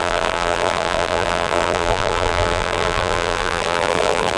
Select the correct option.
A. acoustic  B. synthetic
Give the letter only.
B